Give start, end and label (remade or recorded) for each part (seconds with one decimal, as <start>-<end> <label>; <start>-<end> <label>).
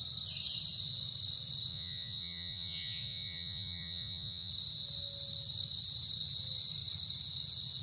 0.0-1.7 recorded; 1.7-4.5 remade; 4.5-7.8 recorded